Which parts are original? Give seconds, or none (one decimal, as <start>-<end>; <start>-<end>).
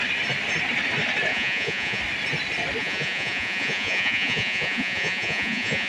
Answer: 0.0-1.3; 2.0-2.8